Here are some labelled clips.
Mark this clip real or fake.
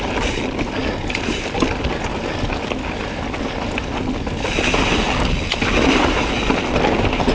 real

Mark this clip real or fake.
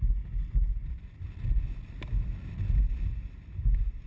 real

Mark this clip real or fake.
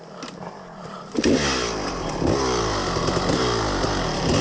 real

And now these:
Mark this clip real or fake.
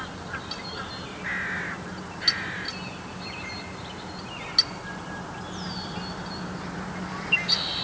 real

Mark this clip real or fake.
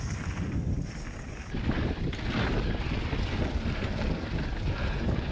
real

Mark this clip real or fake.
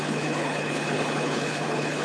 fake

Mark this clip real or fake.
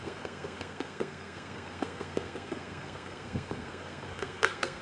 fake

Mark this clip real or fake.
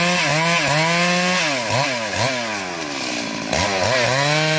real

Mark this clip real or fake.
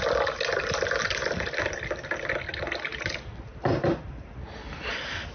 real